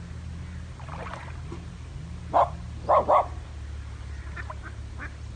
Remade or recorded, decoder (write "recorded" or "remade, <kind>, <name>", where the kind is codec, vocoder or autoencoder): recorded